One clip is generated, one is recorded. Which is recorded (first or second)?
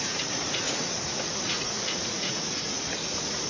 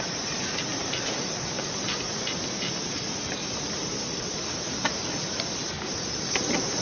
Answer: second